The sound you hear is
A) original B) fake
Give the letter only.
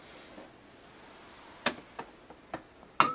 A